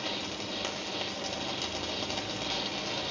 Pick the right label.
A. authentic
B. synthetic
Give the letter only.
A